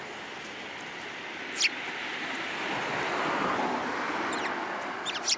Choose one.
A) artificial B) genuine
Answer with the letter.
B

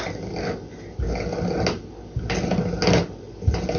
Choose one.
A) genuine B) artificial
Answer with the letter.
A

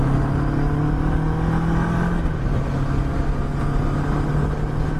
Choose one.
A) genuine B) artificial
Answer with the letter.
A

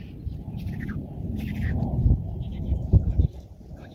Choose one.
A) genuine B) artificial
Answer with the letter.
A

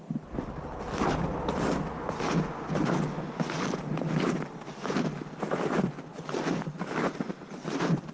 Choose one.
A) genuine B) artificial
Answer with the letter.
A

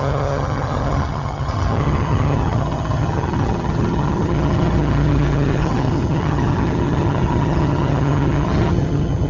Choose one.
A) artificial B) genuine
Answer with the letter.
A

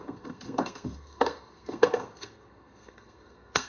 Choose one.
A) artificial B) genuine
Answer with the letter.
A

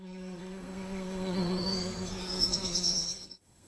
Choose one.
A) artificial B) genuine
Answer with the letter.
A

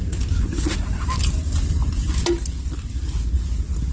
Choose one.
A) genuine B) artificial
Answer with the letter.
A